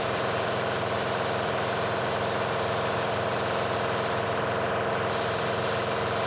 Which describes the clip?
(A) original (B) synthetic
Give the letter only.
A